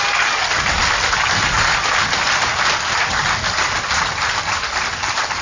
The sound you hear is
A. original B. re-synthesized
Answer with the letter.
A